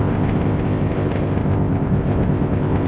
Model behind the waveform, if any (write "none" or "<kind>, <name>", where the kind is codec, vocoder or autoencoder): codec, ZipCodec